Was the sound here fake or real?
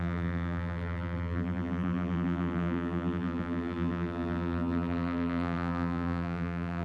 fake